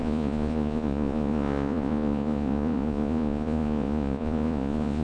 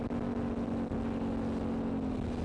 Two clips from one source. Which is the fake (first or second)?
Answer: first